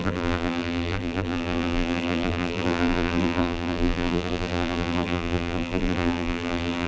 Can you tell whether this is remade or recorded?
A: remade